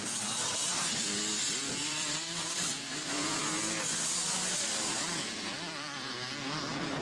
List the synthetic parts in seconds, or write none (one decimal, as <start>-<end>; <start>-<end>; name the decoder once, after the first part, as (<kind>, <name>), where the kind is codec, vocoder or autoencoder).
0.0-0.6 (vocoder, BigVGAN v2); 1.6-7.0